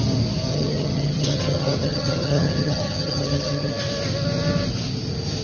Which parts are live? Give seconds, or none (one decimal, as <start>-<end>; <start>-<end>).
0.0-0.5; 3.7-5.4